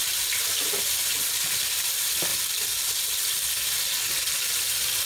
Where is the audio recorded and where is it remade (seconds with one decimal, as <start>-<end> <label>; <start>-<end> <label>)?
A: 0.0-5.1 recorded